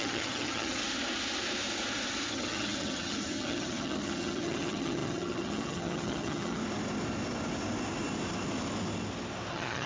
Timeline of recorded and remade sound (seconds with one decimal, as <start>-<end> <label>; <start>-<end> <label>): 0.0-0.8 remade; 0.8-2.3 recorded; 2.3-6.6 remade; 6.6-9.5 recorded; 9.5-9.9 remade